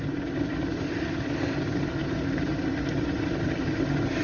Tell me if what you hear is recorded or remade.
recorded